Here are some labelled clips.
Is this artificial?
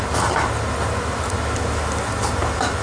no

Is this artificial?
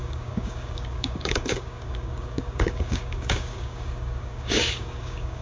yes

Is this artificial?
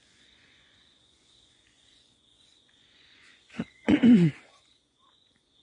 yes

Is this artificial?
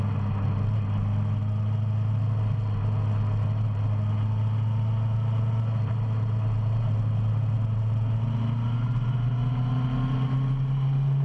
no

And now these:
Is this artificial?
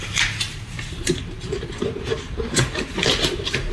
yes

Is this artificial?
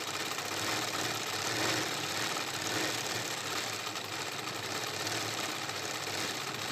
no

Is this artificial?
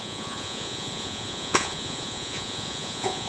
yes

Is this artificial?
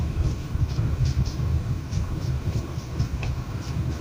yes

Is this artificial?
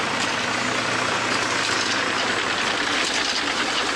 no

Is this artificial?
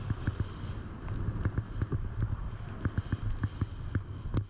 no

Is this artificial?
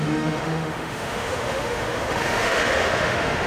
yes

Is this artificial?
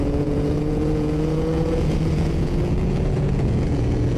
yes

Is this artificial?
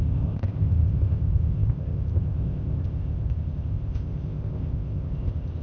yes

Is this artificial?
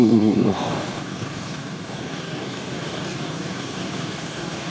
yes